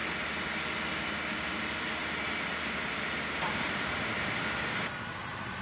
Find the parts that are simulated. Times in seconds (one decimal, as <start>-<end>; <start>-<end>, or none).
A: 0.0-0.6; 2.0-5.6

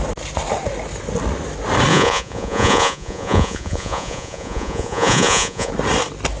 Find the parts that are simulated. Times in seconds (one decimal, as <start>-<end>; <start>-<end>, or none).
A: 1.9-5.7

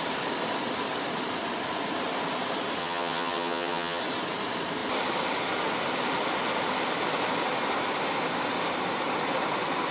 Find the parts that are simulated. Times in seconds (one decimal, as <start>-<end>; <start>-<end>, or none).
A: 2.8-4.0

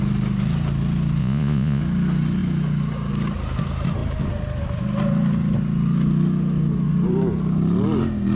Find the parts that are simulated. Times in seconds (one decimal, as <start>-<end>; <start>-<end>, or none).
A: 1.2-1.8

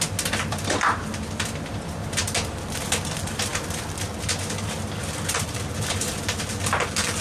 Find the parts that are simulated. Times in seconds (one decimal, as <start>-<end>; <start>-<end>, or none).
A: 0.0-7.2

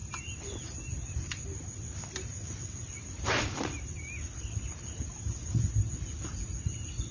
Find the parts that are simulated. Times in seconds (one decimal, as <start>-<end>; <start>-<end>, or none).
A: none

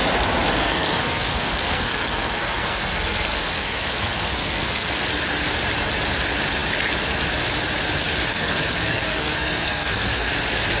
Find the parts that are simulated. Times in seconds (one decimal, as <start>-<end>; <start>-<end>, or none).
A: 0.6-4.9; 8.3-10.3